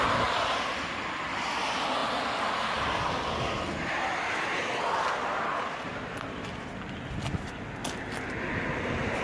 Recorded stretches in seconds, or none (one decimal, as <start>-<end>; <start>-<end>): 0.0-9.2

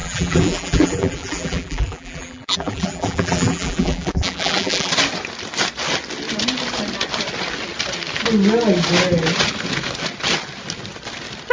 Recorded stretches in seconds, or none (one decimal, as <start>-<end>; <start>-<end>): 4.9-11.5

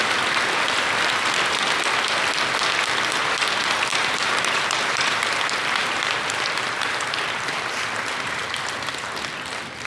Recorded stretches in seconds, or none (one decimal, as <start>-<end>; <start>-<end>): 0.0-3.9; 5.2-5.8; 7.1-9.9

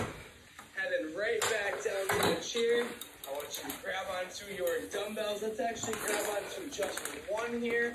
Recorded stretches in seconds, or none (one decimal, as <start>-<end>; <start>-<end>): 0.0-7.9

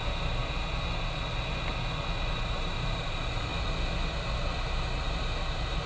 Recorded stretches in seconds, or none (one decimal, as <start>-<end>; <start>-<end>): 0.4-2.3; 3.5-4.2

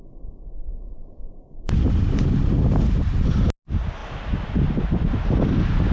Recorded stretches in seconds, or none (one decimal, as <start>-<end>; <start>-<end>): 0.7-1.2; 3.0-4.0; 4.7-5.9